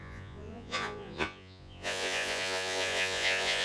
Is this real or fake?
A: fake